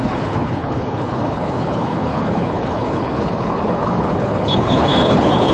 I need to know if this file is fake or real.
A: fake